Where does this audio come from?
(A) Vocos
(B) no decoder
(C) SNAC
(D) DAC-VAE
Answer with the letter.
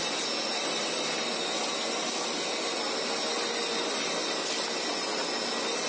B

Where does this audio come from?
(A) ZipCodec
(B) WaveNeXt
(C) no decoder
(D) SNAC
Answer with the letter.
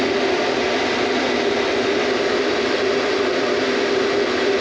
C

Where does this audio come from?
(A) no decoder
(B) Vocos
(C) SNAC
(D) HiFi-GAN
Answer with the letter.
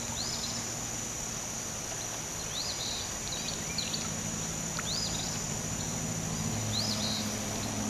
A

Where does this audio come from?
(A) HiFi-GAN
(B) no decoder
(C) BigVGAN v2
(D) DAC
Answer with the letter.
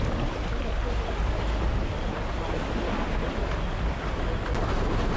B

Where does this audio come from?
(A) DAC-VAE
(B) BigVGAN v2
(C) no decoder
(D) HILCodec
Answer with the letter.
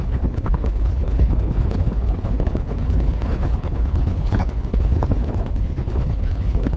D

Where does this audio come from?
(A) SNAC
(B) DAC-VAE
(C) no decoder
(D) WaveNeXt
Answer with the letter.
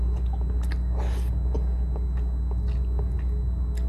C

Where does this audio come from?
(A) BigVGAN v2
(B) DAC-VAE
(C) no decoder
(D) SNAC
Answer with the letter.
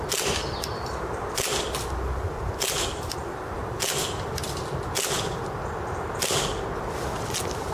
C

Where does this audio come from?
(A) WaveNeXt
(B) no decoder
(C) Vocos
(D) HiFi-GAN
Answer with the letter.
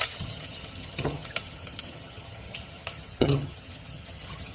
D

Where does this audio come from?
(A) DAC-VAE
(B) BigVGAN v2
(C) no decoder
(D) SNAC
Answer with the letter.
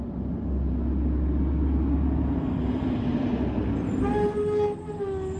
C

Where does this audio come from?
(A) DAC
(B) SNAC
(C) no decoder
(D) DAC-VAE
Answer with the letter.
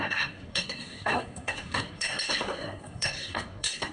B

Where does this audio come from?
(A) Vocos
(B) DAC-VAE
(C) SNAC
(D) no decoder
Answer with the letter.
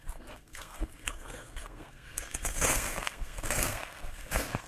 C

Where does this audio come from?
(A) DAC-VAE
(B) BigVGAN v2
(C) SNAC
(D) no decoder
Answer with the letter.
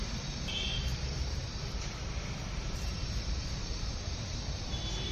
B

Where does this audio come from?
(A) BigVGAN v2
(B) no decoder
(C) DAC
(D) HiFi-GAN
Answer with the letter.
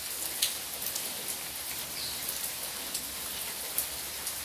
B